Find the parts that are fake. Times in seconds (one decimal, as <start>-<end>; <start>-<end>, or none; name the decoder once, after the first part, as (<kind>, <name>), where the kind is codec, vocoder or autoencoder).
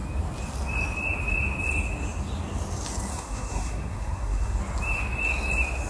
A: 3.1-4.6 (codec, SNAC)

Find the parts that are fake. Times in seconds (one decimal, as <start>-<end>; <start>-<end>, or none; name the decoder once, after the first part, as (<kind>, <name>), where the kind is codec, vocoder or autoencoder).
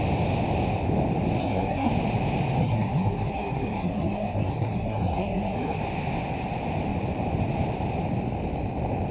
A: 1.4-1.9 (codec, SNAC); 2.6-5.8